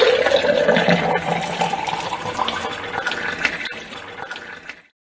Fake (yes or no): no